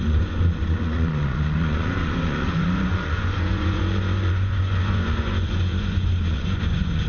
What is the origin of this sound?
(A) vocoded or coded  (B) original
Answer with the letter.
A